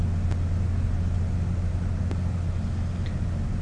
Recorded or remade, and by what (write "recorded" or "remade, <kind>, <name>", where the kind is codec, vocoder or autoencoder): recorded